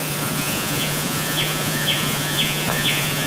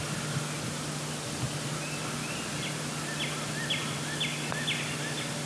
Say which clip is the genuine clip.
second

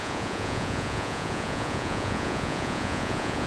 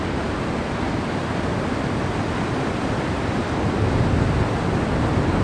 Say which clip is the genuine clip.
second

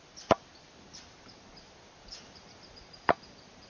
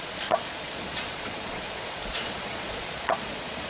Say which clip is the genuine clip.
first